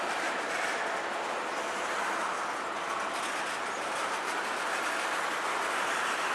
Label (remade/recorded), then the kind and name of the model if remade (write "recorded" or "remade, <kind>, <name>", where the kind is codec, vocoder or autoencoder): recorded